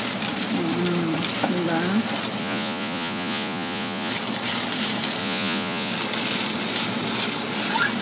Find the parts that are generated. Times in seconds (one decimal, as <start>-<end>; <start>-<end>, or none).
2.4-4.1; 5.2-5.9